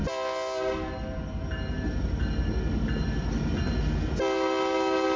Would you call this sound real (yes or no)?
yes